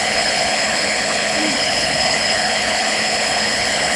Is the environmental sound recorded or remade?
remade